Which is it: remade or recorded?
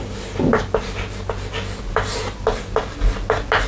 recorded